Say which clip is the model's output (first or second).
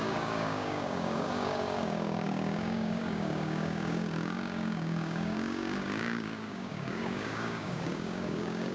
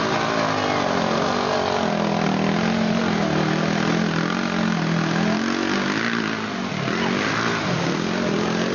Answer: first